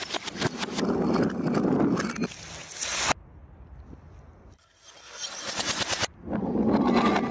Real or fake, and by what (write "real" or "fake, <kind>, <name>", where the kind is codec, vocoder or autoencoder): real